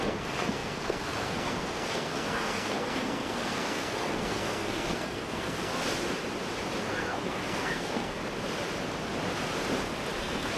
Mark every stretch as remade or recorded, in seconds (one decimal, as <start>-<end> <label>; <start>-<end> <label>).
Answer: 0.0-5.7 remade; 5.7-6.8 recorded; 6.8-8.2 remade; 8.2-10.2 recorded; 10.2-10.6 remade